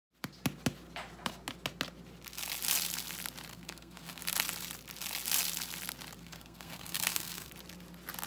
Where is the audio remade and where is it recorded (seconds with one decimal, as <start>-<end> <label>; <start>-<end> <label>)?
0.0-3.5 recorded; 3.5-4.2 remade; 4.2-6.2 recorded; 6.2-7.5 remade; 7.5-8.3 recorded